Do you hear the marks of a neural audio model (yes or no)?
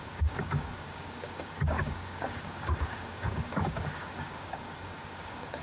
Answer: yes